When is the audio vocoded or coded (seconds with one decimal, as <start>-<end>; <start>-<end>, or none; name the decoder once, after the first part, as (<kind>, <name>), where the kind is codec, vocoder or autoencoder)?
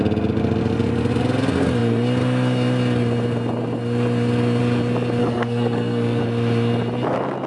5.2-6.2 (codec, SNAC)